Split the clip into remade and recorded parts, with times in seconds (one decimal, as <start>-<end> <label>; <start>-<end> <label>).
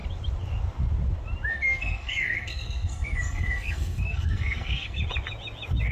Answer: 0.0-1.5 recorded; 1.5-5.0 remade; 5.0-5.9 recorded